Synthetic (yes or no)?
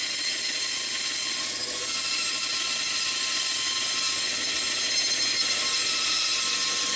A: no